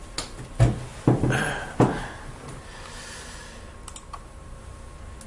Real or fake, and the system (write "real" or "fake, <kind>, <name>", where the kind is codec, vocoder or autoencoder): real